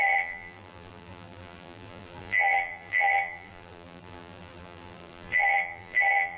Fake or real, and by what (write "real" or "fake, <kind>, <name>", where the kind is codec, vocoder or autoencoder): fake, vocoder, BigVGAN v2